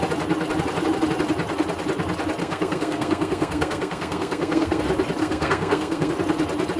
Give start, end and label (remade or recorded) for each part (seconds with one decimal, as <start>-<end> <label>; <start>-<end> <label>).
0.0-2.4 recorded; 2.4-4.8 remade; 4.8-5.2 recorded; 5.2-6.1 remade; 6.1-6.8 recorded